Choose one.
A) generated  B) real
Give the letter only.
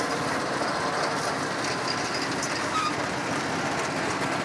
B